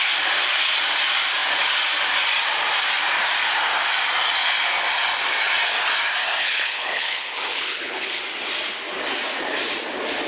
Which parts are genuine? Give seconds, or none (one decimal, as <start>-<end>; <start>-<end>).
0.0-6.4; 8.2-10.3